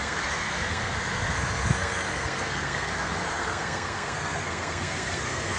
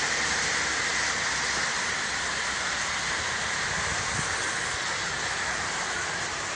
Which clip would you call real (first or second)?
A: second